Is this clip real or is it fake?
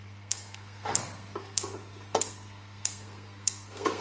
fake